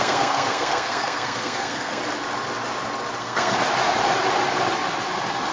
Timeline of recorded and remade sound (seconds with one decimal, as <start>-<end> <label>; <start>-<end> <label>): 0.0-2.0 remade; 2.0-3.2 recorded; 3.2-3.6 remade; 3.6-5.5 recorded